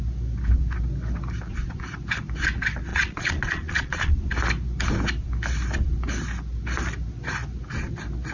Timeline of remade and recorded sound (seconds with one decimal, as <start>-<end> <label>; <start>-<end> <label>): 0.0-2.9 recorded; 2.9-4.1 remade; 4.1-8.3 recorded